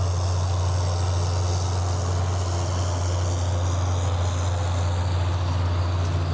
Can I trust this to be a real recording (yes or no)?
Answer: yes